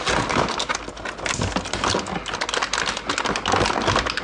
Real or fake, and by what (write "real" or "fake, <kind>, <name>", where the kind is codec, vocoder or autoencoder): real